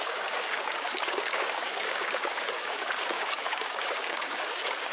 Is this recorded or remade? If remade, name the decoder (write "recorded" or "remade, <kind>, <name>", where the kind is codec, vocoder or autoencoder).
remade, codec, DAC